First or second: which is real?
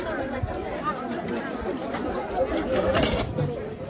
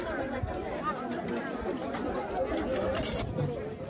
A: second